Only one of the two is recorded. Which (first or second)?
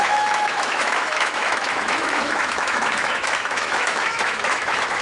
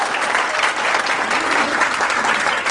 second